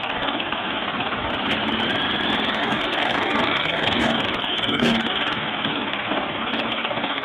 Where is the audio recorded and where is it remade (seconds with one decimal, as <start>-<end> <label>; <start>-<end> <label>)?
0.0-1.3 remade; 1.3-2.5 recorded; 2.5-7.2 remade